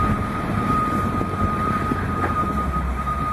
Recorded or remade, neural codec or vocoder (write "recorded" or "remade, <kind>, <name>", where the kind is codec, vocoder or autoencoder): remade, vocoder, BigVGAN v2